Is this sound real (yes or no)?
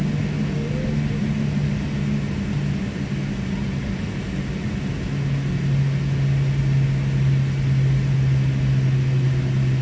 yes